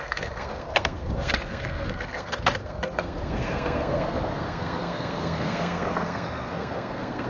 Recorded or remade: remade